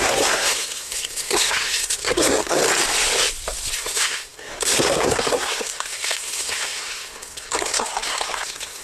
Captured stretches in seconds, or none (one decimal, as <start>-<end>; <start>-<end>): 2.6-3.7